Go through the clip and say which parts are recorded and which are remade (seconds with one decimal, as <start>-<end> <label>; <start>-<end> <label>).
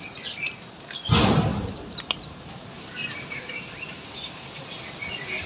0.0-1.5 recorded; 1.5-4.8 remade; 4.8-5.5 recorded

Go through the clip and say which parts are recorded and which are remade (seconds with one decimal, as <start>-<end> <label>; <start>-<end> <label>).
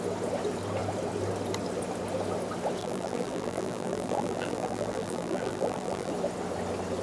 0.0-2.8 recorded; 2.8-6.1 remade; 6.1-7.0 recorded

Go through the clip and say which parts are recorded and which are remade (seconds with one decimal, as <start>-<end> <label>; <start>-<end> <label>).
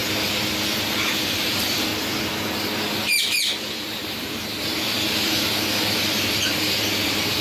0.0-1.1 recorded; 1.1-1.9 remade; 1.9-3.8 recorded; 3.8-7.4 remade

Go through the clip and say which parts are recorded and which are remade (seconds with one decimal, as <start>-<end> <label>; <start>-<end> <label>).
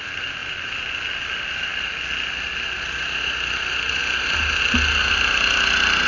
0.0-6.1 recorded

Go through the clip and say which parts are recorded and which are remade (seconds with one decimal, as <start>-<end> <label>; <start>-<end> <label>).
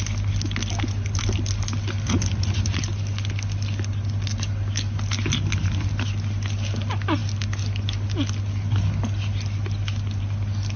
0.0-10.8 recorded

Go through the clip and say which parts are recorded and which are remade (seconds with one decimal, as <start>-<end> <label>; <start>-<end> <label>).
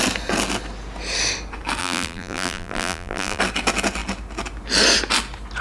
0.0-1.8 recorded; 1.8-3.4 remade; 3.4-5.6 recorded